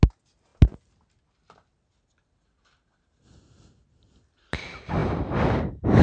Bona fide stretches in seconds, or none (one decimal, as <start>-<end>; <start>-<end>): 0.0-6.0